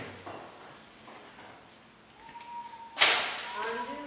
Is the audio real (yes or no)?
yes